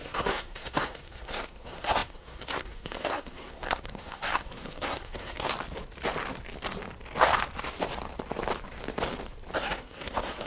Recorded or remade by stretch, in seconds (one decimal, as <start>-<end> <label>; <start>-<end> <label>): 0.0-5.5 remade; 5.5-9.6 recorded; 9.6-10.5 remade